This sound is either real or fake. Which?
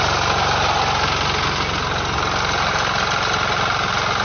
real